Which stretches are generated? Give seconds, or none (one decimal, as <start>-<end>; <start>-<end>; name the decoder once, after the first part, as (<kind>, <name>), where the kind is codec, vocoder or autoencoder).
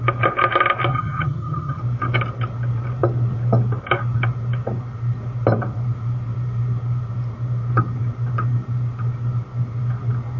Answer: 0.9-1.8 (vocoder, HiFi-GAN)